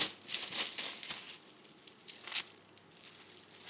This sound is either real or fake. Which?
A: real